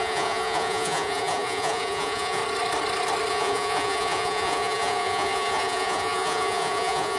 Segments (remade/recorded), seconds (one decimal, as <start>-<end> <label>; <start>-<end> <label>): 0.0-2.4 remade; 2.4-3.3 recorded; 3.3-7.2 remade